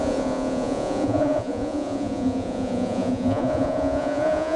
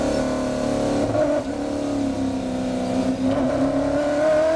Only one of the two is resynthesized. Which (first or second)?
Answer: first